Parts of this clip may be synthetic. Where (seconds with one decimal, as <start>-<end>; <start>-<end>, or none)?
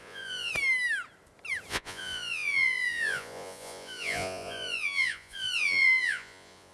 0.0-0.5; 1.7-6.7